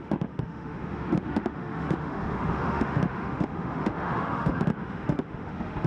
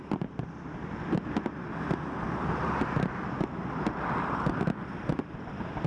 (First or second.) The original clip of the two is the second